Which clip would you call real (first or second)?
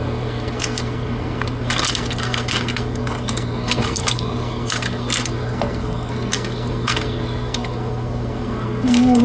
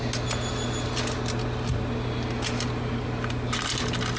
second